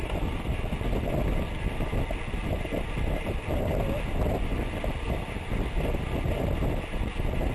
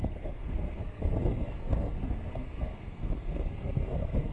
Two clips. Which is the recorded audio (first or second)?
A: first